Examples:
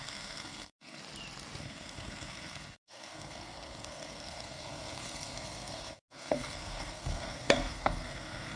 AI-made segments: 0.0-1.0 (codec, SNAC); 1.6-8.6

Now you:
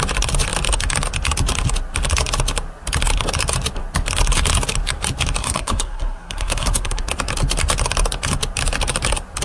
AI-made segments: 5.4-7.0 (codec, SNAC)

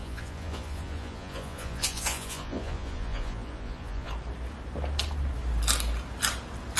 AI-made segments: 0.0-4.1 (vocoder, Vocos)

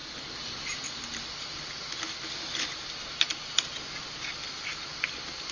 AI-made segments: none

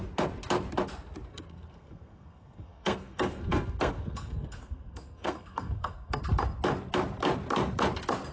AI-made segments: 1.3-6.2 (codec, SNAC)

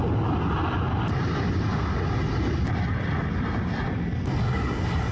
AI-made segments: none

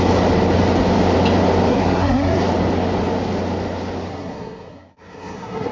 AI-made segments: 1.7-2.4 (codec, SNAC); 4.1-5.7

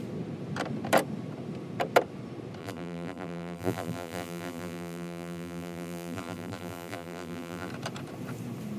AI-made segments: 2.6-7.7 (vocoder, BigVGAN v2)